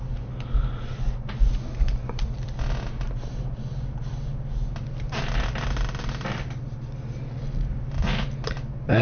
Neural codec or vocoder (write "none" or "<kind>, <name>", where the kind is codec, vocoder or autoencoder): none